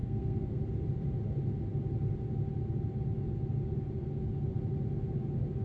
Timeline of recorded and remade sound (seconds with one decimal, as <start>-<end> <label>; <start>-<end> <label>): 0.0-0.6 remade; 0.6-5.6 recorded